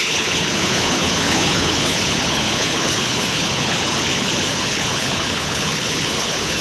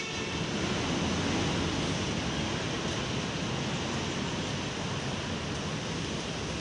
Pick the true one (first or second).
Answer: second